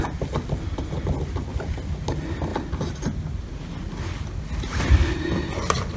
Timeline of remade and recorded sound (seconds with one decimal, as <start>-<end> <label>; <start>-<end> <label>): 0.0-6.0 recorded

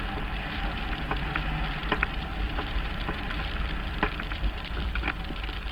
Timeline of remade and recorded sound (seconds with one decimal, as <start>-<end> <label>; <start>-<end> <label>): 0.0-1.8 recorded; 1.8-5.2 remade; 5.2-5.7 recorded

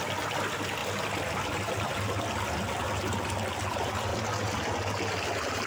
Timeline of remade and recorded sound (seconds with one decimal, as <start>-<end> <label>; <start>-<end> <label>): 0.0-5.7 recorded

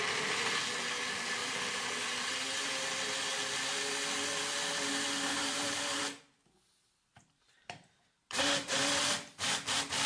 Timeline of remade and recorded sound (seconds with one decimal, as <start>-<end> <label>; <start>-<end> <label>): 0.0-1.4 recorded; 1.4-2.3 remade; 2.3-5.3 recorded; 5.3-6.0 remade; 6.0-7.1 recorded; 7.1-9.0 remade; 9.0-10.1 recorded